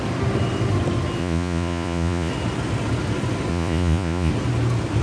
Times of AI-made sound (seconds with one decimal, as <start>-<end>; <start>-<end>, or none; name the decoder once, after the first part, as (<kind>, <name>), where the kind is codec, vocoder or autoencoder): 1.2-2.3 (vocoder, Vocos); 3.5-4.3